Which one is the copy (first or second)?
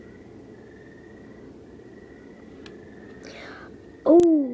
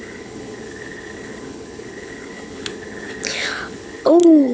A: second